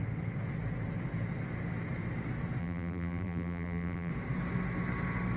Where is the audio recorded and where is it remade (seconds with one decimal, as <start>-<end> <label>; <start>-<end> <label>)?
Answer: 0.0-2.6 recorded; 2.6-4.1 remade; 4.1-5.4 recorded